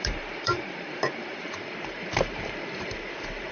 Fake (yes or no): yes